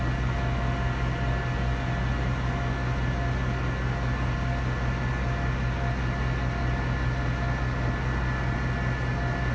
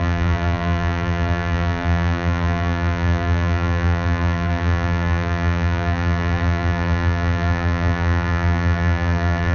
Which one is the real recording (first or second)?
first